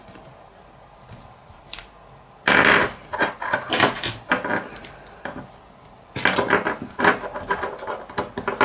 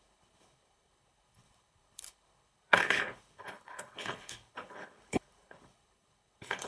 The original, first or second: first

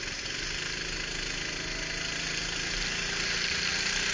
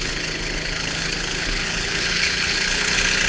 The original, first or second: first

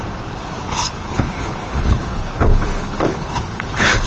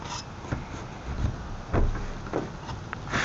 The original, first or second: second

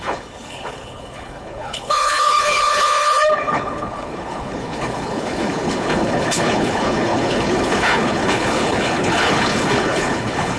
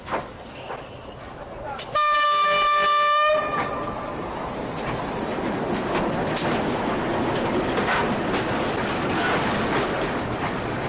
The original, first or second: second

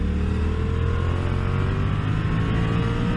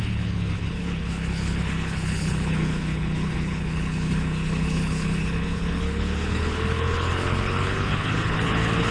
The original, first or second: first